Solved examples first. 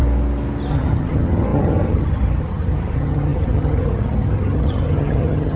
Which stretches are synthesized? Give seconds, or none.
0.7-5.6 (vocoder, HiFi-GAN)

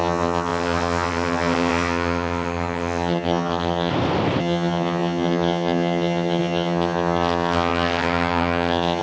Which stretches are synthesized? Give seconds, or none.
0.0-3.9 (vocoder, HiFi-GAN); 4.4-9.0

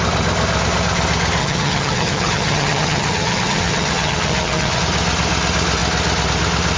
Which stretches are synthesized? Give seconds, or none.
1.4-4.8 (vocoder, HiFi-GAN)

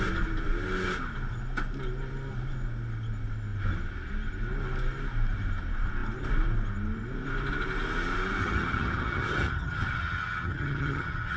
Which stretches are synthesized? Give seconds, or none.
8.4-11.4 (vocoder, HiFi-GAN)